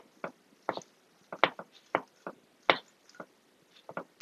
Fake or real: real